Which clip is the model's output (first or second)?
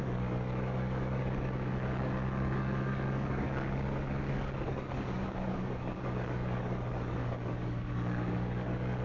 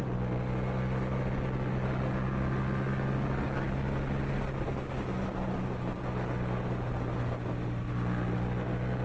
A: first